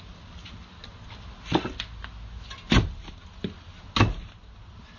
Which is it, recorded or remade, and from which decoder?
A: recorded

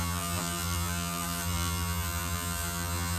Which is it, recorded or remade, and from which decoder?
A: remade, vocoder, BigVGAN v2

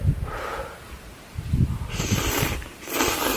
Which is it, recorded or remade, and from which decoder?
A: recorded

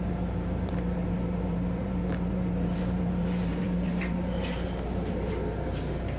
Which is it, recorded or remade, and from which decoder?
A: remade, vocoder, BigVGAN v2